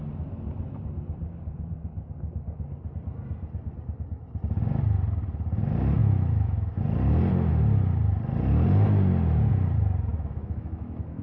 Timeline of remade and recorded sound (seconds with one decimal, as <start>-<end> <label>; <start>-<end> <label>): 0.0-6.0 recorded; 6.0-6.8 remade; 6.8-10.1 recorded; 10.1-11.2 remade